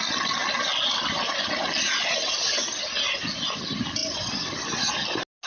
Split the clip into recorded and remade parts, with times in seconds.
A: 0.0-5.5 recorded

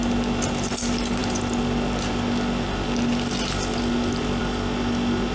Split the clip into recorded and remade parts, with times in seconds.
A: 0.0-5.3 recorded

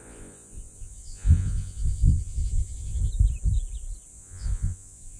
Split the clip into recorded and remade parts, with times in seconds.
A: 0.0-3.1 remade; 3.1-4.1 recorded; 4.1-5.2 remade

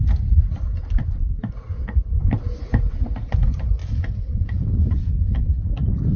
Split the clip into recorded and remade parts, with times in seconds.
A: 0.0-6.2 recorded

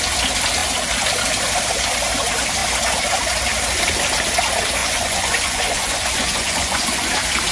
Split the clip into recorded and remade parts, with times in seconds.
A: 0.0-4.8 recorded; 4.8-7.1 remade; 7.1-7.5 recorded